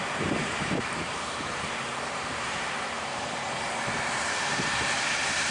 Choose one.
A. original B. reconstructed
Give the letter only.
B